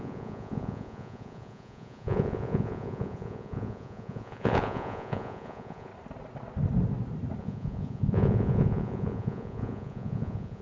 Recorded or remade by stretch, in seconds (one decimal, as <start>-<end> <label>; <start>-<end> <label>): 0.0-5.9 remade; 5.9-7.4 recorded; 7.4-10.6 remade